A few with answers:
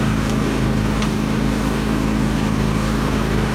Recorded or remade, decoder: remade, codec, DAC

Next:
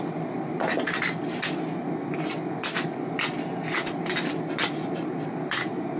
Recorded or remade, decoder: recorded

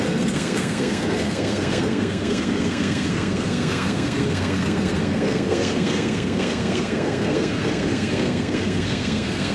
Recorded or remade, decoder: remade, codec, SNAC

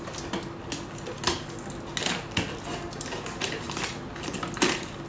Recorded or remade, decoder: recorded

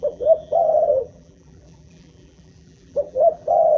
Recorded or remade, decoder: remade, vocoder, BigVGAN v2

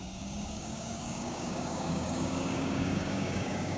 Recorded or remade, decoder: remade, codec, DAC